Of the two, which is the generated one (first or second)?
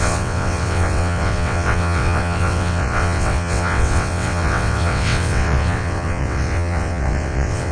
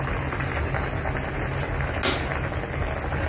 first